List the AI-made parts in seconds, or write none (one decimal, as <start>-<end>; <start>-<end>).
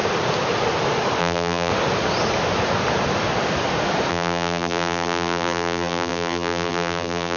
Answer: 1.2-1.7; 4.1-7.4